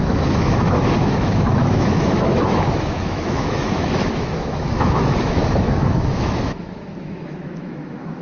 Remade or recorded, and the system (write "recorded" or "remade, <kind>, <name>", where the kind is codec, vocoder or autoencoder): remade, autoencoder, DAC-VAE